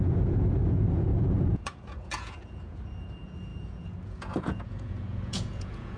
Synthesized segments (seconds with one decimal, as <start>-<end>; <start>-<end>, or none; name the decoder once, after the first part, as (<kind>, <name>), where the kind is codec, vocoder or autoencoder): 0.0-6.0 (vocoder, Vocos)

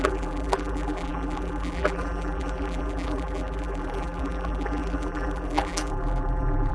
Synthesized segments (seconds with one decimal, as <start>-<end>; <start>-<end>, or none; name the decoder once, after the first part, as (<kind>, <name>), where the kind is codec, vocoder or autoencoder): 0.0-6.7 (vocoder, BigVGAN v2)

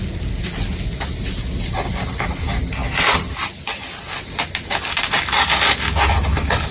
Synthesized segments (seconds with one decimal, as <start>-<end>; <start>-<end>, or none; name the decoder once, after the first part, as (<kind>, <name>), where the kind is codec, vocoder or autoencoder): none

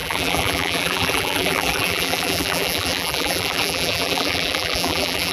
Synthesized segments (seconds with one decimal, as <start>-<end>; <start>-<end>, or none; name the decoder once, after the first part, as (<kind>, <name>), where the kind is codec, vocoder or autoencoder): 0.0-5.3 (vocoder, BigVGAN v2)